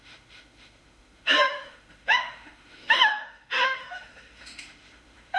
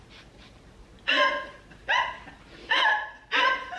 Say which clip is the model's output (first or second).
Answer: first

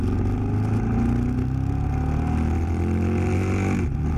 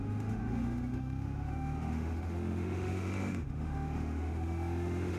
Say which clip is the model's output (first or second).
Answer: second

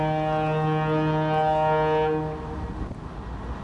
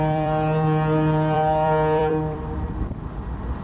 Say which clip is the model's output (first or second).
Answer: second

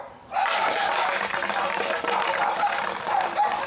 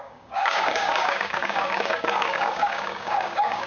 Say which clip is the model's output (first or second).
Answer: second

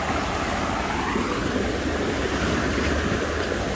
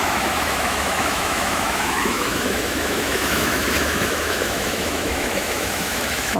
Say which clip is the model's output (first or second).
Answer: second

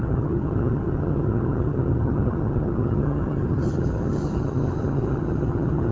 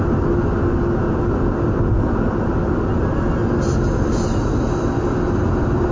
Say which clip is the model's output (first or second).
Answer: first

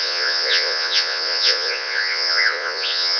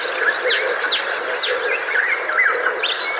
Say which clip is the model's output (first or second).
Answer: first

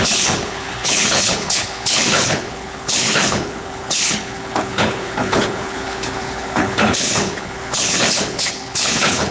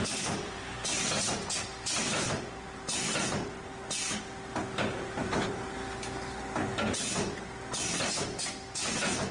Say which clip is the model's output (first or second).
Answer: first